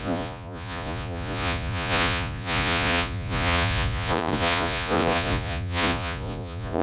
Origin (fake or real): fake